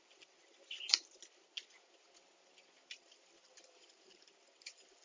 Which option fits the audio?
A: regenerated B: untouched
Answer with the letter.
B